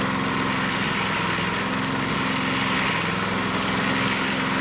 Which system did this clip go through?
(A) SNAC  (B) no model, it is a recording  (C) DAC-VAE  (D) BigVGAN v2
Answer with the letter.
B